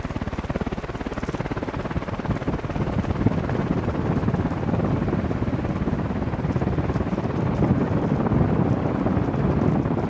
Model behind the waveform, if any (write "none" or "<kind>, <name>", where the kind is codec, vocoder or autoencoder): none